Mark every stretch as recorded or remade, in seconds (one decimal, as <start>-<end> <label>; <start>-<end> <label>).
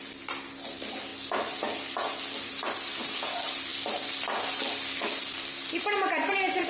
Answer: 0.0-6.7 recorded